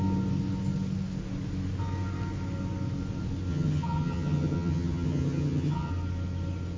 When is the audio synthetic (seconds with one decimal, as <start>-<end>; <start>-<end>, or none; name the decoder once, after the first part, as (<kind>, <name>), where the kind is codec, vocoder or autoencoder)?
3.5-5.9 (vocoder, HiFi-GAN)